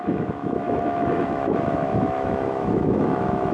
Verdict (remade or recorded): remade